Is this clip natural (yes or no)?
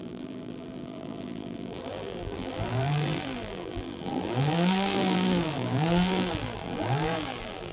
no